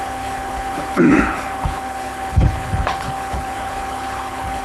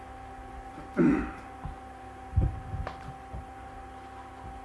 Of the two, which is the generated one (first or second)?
first